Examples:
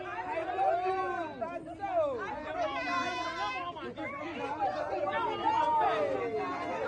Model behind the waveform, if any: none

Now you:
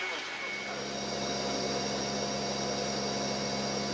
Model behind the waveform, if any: none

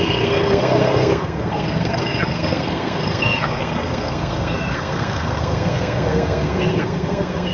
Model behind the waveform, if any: codec, SNAC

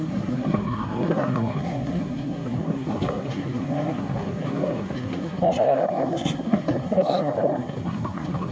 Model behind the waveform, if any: codec, SNAC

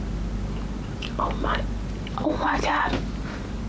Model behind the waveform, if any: none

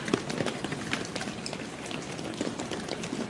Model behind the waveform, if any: none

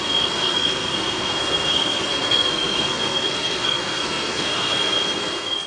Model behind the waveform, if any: codec, SNAC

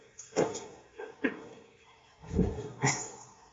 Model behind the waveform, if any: codec, SNAC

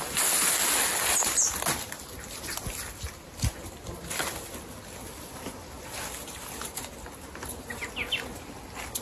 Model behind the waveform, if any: none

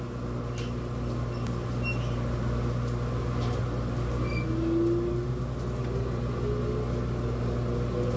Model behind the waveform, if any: none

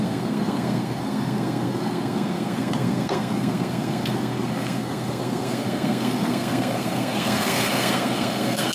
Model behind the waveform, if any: codec, SNAC